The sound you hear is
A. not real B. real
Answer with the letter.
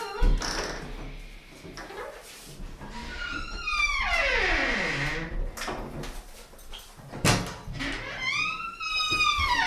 B